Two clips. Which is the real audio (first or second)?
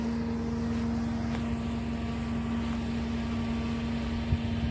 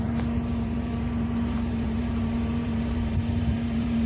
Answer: first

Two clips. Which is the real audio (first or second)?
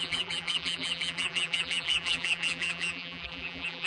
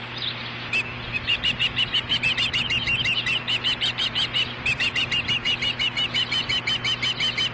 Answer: second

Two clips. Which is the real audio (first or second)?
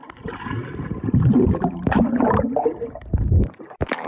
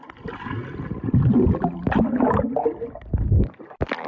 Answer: second